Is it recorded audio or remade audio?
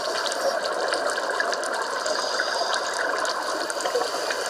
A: recorded